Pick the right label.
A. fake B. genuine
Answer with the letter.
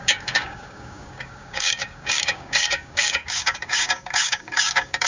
A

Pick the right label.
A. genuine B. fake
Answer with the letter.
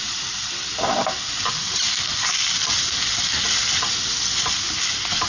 A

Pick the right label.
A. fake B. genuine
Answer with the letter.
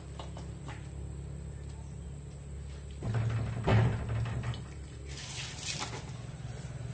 B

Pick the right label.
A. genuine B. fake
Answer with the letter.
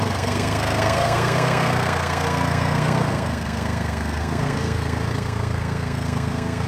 B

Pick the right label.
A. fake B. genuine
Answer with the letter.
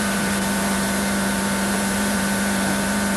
A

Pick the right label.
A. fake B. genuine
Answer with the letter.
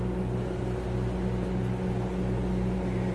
B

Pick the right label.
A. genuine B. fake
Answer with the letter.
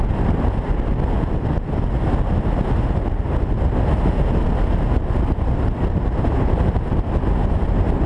A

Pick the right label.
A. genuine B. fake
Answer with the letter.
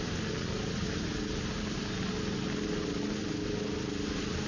A